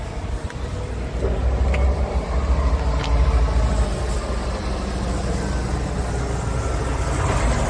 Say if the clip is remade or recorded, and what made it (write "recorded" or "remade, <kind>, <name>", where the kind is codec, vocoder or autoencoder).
recorded